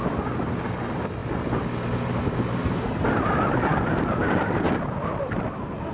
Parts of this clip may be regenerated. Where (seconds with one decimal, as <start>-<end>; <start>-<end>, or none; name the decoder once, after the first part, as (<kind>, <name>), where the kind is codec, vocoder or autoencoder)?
none